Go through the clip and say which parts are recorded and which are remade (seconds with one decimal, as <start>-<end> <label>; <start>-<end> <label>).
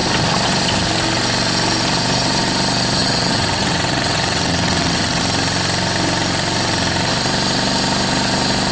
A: 0.0-3.0 recorded; 3.0-5.2 remade; 5.2-8.7 recorded